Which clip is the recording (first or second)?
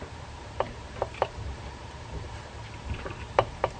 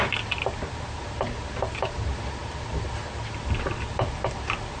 second